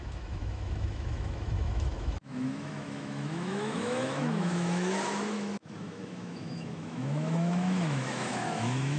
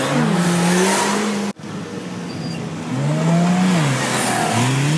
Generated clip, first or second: first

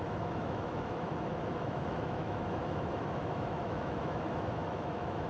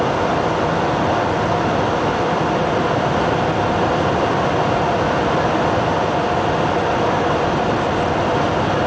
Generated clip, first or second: first